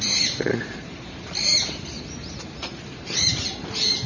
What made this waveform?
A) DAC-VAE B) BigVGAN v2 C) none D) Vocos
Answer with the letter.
B